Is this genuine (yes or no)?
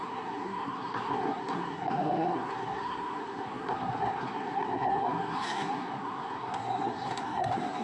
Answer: no